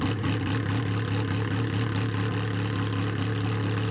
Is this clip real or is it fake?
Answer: real